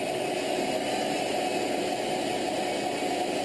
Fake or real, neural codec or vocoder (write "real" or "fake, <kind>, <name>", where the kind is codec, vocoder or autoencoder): real